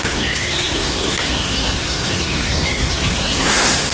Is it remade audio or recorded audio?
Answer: remade